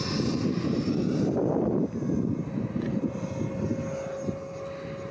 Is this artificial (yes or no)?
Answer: no